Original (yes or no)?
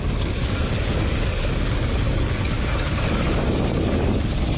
no